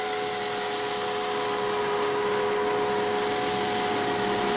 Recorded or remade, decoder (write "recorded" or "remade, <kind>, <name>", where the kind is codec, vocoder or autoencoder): recorded